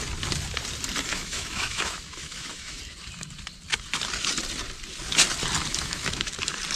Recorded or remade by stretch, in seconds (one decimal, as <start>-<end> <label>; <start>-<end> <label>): 0.0-1.1 recorded; 1.1-2.8 remade; 2.8-5.7 recorded; 5.7-6.3 remade; 6.3-6.8 recorded